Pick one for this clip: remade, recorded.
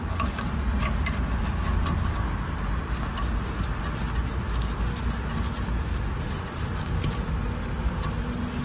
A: recorded